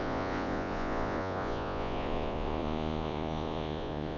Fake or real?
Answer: fake